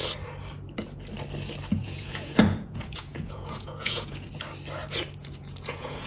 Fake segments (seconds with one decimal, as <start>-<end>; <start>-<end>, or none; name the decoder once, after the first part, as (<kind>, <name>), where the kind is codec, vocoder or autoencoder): 1.8-4.3 (vocoder, Vocos); 5.2-6.1

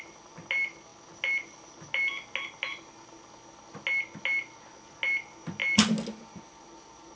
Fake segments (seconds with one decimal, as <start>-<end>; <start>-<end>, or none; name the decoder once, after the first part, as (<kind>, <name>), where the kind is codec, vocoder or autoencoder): none